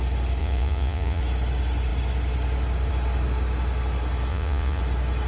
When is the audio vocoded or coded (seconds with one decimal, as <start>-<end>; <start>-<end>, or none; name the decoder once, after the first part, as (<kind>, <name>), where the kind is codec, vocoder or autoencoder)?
0.4-1.2 (vocoder, Vocos); 4.3-4.8